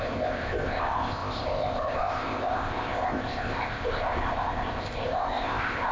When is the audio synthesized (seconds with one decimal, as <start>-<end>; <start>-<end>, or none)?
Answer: 0.0-5.9